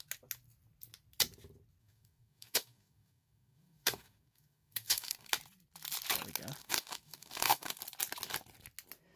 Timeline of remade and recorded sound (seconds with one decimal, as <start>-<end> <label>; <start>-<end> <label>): 0.0-1.8 recorded; 1.8-5.3 remade; 5.3-6.6 recorded; 6.6-7.8 remade; 7.8-9.2 recorded